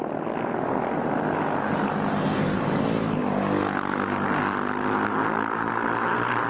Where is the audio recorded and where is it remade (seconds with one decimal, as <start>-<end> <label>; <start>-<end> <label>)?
0.0-6.5 recorded

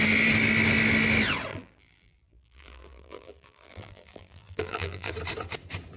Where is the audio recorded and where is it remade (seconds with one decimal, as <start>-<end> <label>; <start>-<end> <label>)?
0.0-1.5 recorded; 1.5-5.1 remade; 5.1-6.0 recorded

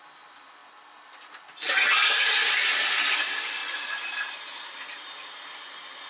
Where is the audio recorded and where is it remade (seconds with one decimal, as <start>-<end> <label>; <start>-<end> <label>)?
0.0-6.1 recorded

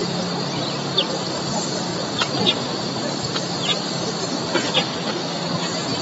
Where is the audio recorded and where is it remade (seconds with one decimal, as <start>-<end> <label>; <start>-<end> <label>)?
0.0-6.0 recorded

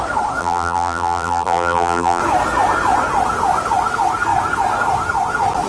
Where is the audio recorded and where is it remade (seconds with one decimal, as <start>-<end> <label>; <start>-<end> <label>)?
0.0-0.4 recorded; 0.4-2.2 remade; 2.2-5.7 recorded

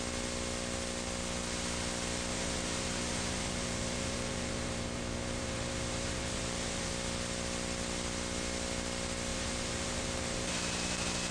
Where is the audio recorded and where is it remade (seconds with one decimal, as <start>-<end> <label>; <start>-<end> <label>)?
0.0-2.3 recorded; 2.3-6.9 remade; 6.9-9.3 recorded; 9.3-10.5 remade; 10.5-11.3 recorded